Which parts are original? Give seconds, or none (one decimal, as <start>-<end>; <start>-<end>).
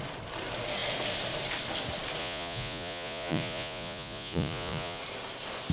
0.0-2.2; 5.0-5.7